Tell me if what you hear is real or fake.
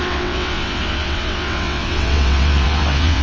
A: fake